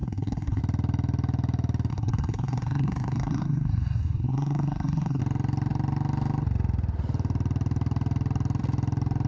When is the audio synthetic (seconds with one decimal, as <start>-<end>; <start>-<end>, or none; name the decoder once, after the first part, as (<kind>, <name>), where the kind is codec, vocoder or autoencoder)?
0.0-0.6 (codec, SNAC); 1.9-5.2